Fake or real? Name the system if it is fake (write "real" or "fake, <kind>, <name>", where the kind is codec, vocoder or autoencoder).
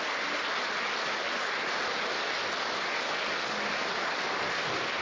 real